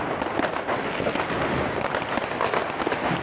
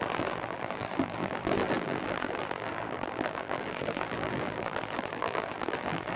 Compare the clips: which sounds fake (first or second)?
second